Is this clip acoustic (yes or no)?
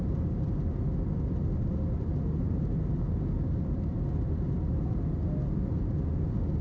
yes